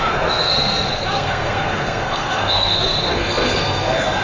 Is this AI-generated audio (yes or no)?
yes